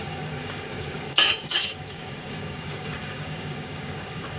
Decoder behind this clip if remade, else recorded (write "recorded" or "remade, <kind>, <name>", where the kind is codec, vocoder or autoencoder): remade, codec, DAC